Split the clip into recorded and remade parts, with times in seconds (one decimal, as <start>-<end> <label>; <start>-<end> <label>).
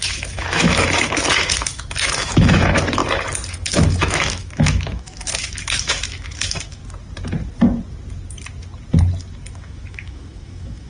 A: 0.0-3.0 remade; 3.0-3.5 recorded; 3.5-6.8 remade; 6.8-9.5 recorded; 9.5-10.9 remade